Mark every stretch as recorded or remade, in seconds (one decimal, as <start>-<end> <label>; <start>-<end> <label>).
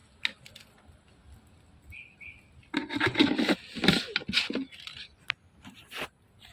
0.0-6.5 recorded